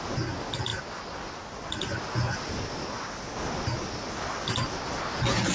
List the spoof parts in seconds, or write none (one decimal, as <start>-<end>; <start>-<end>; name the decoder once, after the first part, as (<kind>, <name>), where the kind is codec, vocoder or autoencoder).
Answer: 0.7-1.8 (vocoder, BigVGAN v2)

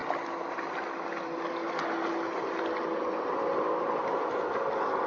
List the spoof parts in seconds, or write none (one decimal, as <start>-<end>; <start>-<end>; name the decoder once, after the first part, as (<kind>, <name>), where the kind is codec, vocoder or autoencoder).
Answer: none

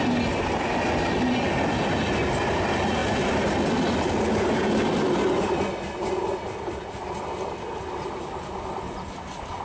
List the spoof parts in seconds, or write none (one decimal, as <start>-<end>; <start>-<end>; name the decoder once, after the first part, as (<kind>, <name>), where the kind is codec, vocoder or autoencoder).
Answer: none

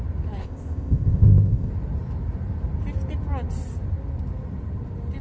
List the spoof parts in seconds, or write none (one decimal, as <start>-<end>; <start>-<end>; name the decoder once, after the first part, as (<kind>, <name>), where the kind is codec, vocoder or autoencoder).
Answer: 0.4-1.7 (codec, ZipCodec)